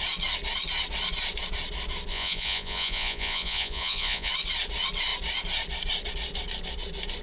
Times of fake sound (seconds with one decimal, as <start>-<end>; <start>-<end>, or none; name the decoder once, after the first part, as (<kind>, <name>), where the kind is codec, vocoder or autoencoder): 2.1-4.3 (vocoder, Vocos)